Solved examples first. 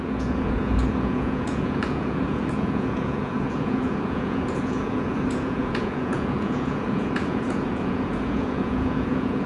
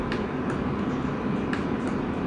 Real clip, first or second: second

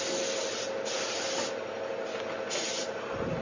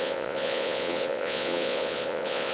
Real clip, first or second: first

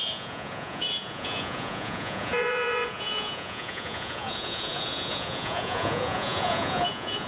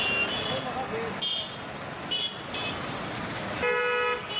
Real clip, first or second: second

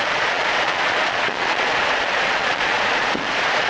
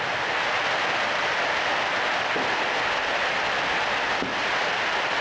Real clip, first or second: second